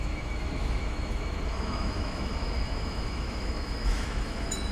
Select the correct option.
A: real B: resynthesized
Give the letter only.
B